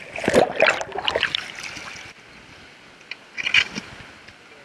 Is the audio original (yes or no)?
yes